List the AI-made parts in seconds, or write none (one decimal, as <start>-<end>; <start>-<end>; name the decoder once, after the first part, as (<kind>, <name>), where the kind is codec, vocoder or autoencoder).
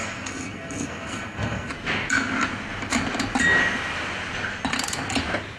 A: 0.0-1.7 (codec, SNAC)